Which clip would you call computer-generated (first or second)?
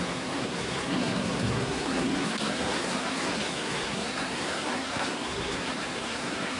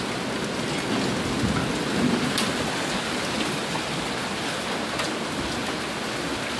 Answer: first